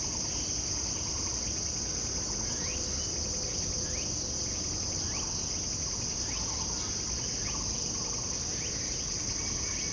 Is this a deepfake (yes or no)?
no